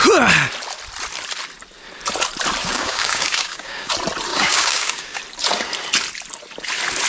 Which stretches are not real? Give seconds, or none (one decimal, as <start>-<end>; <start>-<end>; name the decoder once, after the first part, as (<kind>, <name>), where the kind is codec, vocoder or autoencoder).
2.6-3.9 (codec, DAC); 4.3-5.2